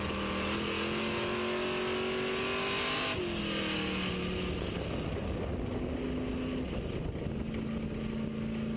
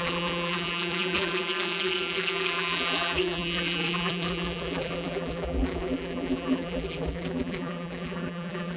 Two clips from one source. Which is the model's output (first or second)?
second